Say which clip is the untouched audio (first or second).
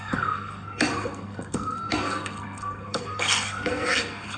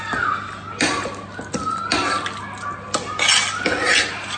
second